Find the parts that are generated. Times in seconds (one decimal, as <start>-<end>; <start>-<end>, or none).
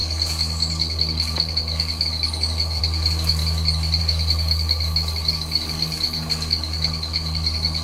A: 0.0-3.4; 4.0-7.8